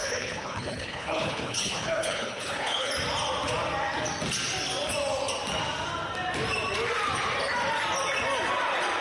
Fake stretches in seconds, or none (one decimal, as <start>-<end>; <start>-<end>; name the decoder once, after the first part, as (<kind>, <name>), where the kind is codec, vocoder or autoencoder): 0.0-2.9 (codec, HILCodec)